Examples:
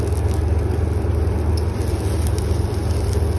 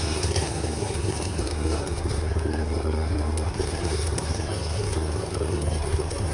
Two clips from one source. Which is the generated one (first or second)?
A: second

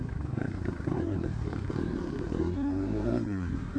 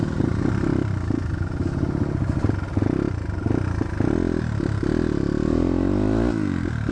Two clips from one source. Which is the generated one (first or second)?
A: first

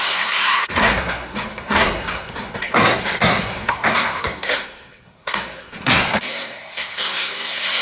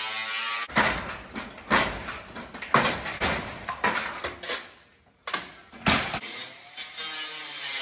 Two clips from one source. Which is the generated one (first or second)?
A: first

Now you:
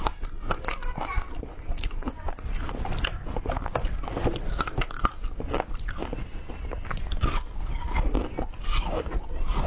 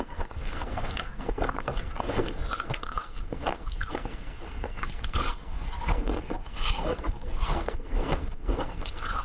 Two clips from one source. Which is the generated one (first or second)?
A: second